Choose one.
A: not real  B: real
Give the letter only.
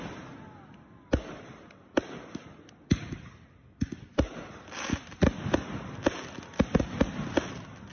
B